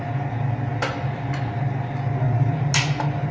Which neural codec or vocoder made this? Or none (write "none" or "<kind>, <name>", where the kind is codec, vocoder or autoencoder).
none